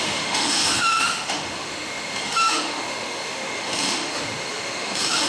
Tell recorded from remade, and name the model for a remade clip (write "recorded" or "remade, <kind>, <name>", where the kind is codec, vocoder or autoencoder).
remade, autoencoder, DAC-VAE